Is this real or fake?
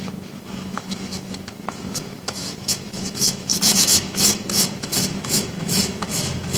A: fake